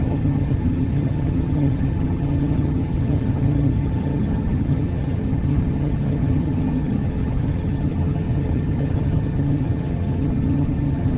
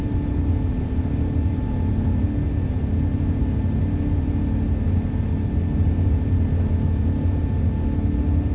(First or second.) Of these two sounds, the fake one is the first